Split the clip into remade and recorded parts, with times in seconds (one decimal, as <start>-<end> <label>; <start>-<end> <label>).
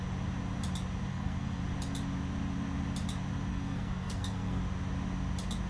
0.0-1.1 recorded; 1.1-1.6 remade; 1.6-3.5 recorded; 3.5-4.6 remade; 4.6-5.7 recorded